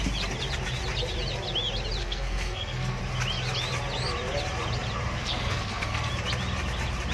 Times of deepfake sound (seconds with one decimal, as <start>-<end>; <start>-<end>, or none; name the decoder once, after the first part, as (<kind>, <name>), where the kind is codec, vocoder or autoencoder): 2.0-3.0 (codec, SNAC); 5.2-6.1